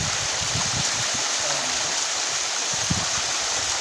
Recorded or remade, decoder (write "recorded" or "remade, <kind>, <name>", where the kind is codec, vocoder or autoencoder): recorded